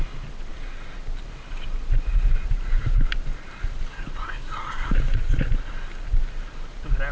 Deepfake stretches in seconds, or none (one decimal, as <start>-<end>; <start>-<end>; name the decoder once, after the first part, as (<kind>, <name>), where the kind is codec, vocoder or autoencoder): none